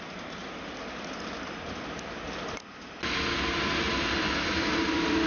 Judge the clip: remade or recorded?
recorded